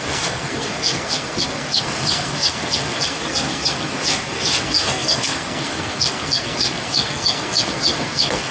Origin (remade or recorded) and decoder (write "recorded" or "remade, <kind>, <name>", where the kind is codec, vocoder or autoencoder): remade, codec, SNAC